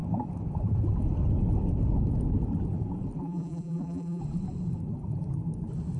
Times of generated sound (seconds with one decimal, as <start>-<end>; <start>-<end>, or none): 3.2-4.2